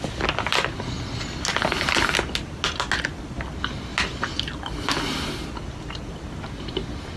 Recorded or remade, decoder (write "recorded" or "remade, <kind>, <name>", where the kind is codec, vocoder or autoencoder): recorded